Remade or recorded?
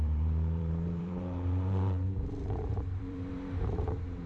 remade